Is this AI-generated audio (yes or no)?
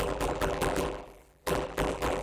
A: yes